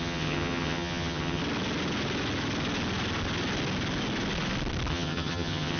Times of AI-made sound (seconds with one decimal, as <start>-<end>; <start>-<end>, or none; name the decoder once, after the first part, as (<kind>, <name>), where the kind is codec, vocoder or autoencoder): 0.0-1.4 (vocoder, HiFi-GAN); 4.9-5.8